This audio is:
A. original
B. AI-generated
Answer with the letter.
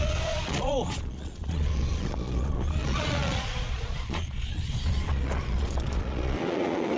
B